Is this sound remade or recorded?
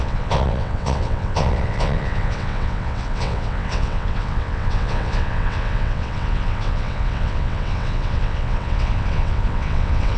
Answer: remade